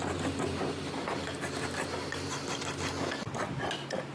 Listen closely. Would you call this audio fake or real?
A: real